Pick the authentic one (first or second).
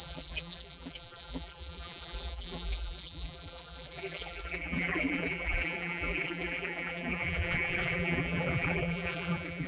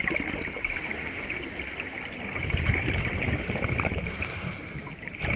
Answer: second